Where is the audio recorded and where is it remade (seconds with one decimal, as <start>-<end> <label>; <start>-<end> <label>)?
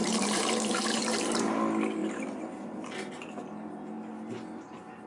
0.0-1.4 remade; 1.4-2.0 recorded; 2.0-3.4 remade; 3.4-5.1 recorded